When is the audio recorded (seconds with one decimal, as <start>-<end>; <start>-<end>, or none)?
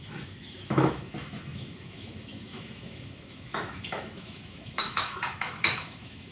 none